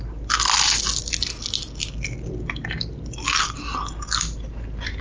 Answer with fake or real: real